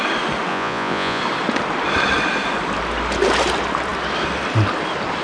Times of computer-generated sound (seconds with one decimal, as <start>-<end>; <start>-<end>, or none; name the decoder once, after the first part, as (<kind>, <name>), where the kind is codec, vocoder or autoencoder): 0.5-1.2 (vocoder, Vocos)